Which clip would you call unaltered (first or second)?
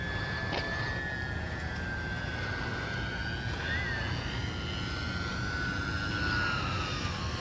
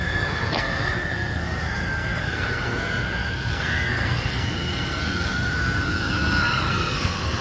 first